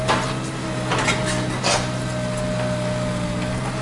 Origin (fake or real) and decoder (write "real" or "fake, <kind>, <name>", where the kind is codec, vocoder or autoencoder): real